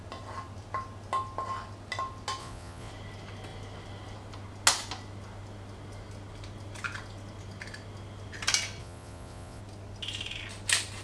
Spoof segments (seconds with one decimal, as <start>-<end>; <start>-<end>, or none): 2.4-2.9; 8.8-9.6